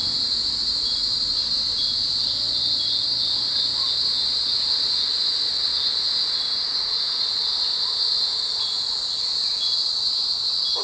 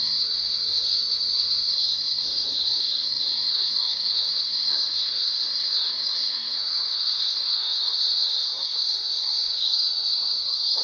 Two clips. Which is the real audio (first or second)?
first